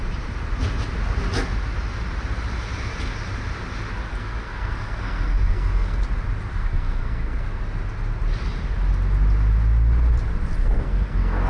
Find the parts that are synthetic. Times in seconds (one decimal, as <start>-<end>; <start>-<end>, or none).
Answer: 4.1-6.0; 6.5-7.6; 10.6-11.5